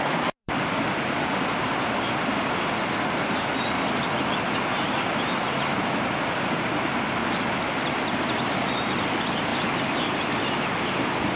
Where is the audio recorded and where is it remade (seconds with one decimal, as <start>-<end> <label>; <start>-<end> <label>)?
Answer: 0.0-0.4 recorded; 0.4-5.5 remade; 5.5-11.4 recorded

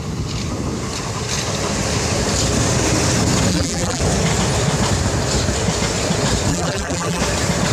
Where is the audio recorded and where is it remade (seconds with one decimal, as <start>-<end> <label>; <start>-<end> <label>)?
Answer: 0.0-3.5 recorded; 3.5-4.0 remade; 4.0-6.5 recorded; 6.5-7.2 remade; 7.2-7.7 recorded

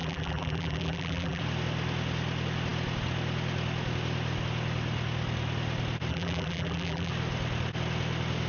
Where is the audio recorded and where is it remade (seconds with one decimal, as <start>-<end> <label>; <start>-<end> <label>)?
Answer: 0.0-1.4 remade; 1.4-6.1 recorded; 6.1-7.1 remade; 7.1-8.5 recorded

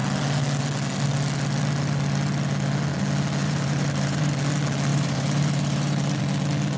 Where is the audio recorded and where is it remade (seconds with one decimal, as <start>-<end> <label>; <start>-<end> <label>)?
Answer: 0.0-3.4 recorded; 3.4-4.3 remade; 4.3-4.9 recorded; 4.9-6.2 remade; 6.2-6.8 recorded

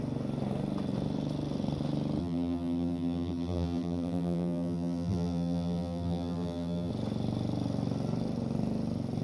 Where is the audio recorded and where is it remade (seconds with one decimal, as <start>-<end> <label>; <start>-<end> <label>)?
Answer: 0.0-2.2 recorded; 2.2-6.9 remade; 6.9-9.2 recorded